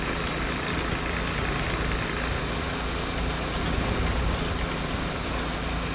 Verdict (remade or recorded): recorded